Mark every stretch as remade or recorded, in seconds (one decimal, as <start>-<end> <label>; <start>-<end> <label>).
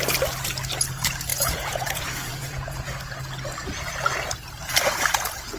0.0-1.3 recorded; 1.3-2.9 remade; 2.9-5.6 recorded